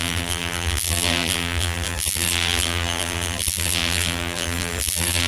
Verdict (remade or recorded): remade